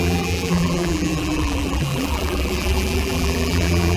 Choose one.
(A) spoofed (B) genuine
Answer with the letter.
A